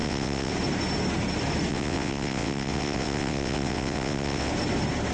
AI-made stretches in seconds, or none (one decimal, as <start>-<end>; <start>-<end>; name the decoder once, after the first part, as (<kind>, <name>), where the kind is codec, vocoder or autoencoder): 0.0-0.5 (vocoder, WaveNeXt); 1.7-4.5

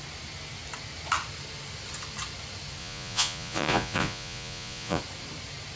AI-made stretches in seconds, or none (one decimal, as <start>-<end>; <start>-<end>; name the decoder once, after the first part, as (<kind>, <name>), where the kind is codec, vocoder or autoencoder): 2.8-5.0 (vocoder, Vocos)

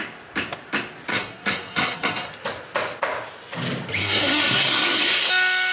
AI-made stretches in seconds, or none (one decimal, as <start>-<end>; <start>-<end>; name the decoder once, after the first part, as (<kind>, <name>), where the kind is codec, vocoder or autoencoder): 1.1-2.3 (codec, SNAC); 4.0-5.3

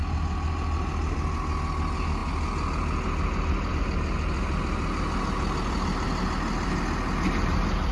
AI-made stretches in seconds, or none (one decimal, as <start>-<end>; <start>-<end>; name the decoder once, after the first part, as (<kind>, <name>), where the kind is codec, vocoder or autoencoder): none